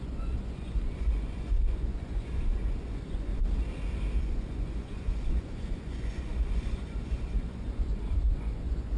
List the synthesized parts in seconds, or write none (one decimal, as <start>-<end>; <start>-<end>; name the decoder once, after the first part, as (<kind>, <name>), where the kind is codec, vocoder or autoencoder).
0.0-3.3 (vocoder, Vocos); 4.2-9.0